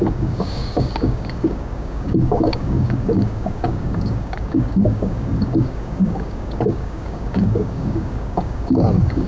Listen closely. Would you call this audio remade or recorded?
remade